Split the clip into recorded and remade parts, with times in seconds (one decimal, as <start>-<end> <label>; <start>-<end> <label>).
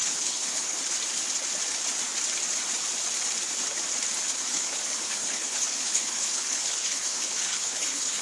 0.0-0.8 remade; 0.8-4.5 recorded; 4.5-8.2 remade